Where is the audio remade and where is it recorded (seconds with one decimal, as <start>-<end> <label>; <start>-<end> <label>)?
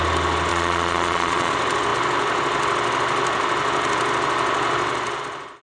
0.0-0.5 recorded; 0.5-1.5 remade; 1.5-5.7 recorded